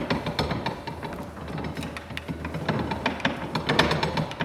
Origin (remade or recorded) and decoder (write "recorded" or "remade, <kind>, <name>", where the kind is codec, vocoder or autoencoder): recorded